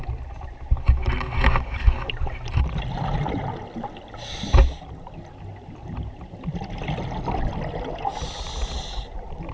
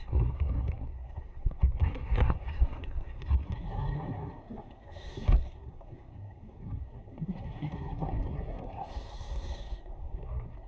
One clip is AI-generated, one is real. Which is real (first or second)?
first